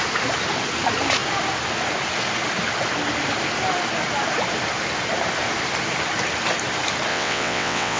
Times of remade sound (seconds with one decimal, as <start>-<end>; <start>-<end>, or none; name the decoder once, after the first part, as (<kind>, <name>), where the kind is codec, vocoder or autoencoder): 7.1-8.0 (vocoder, WaveNeXt)

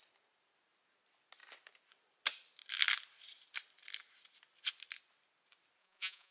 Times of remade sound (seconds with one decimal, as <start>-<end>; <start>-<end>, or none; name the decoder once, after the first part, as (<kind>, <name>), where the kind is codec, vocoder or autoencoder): 5.8-6.3 (vocoder, Vocos)

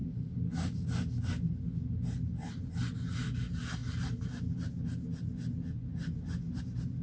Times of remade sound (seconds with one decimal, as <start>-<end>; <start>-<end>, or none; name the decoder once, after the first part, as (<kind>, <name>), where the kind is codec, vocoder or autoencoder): none

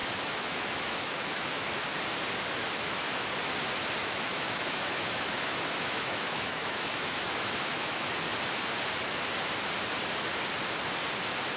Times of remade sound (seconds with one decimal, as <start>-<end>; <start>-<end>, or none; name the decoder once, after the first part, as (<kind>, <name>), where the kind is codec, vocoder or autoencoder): 0.0-1.7 (autoencoder, DAC-VAE); 4.0-8.1

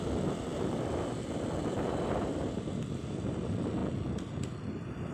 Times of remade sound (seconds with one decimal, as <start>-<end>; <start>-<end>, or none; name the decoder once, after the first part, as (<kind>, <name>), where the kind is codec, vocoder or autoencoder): none

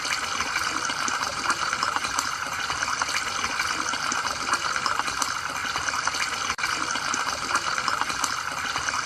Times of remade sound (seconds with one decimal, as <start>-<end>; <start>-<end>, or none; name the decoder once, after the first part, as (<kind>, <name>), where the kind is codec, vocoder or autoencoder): 1.3-2.6 (vocoder, BigVGAN v2)

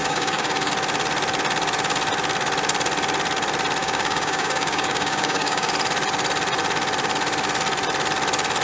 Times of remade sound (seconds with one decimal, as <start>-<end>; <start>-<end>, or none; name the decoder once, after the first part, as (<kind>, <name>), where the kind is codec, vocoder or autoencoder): 0.0-0.7 (codec, DAC); 3.8-5.7

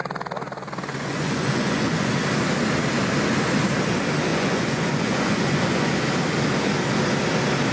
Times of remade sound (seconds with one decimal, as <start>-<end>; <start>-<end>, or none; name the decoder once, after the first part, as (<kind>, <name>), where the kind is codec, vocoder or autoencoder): 0.9-2.1 (vocoder, Vocos); 4.3-5.9